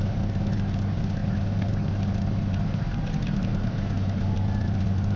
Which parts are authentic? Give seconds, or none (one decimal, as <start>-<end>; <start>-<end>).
0.0-5.2